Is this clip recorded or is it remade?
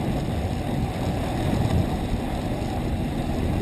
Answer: recorded